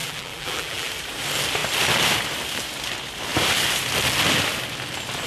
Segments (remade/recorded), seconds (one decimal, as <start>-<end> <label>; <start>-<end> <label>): 0.0-0.9 remade; 0.9-5.3 recorded